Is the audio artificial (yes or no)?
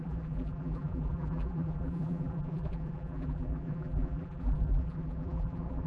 yes